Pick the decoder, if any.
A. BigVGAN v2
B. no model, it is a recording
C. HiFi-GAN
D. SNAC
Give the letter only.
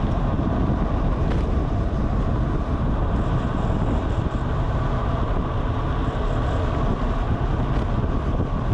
B